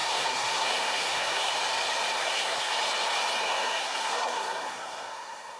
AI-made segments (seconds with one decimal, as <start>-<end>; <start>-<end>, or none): 0.0-1.5; 2.2-2.7; 3.4-5.6